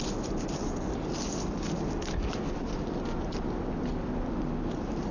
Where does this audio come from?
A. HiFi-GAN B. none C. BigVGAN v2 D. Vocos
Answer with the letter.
B